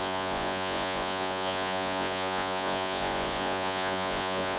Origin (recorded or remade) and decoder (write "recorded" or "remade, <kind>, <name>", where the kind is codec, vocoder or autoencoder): remade, vocoder, Vocos